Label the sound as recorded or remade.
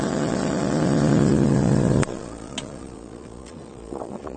remade